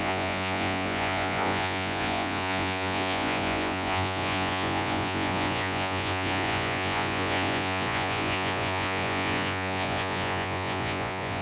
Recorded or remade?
remade